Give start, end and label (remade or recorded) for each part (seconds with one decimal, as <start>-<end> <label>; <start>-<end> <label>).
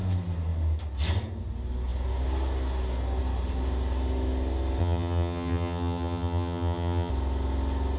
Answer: 0.0-4.8 recorded; 4.8-7.1 remade; 7.1-8.0 recorded